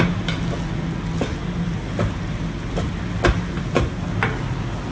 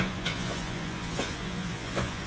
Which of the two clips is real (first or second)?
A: first